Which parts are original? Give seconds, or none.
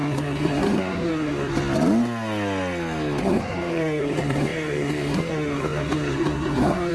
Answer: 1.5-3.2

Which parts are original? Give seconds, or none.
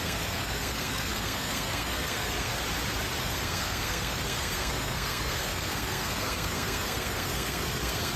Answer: 2.5-3.2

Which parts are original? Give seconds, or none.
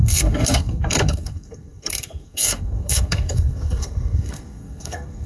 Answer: none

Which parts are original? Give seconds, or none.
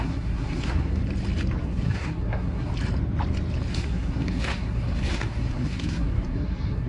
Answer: 1.0-1.6; 2.7-3.7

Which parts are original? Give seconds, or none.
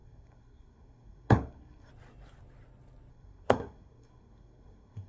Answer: 1.9-3.1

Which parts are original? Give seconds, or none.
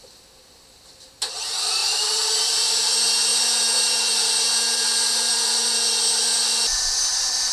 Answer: 0.0-7.5